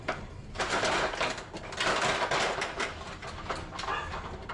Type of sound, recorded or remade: remade